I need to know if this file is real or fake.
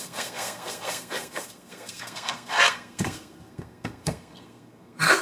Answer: fake